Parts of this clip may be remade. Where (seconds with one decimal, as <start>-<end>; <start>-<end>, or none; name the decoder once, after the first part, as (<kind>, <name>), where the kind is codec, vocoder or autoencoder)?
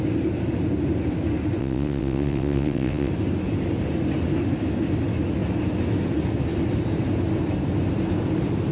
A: 1.6-3.1 (vocoder, WaveNeXt)